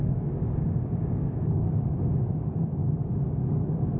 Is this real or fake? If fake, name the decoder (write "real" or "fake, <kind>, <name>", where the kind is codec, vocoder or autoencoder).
fake, codec, DAC